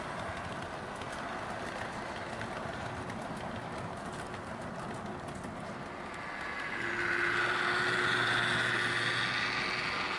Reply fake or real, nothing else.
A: real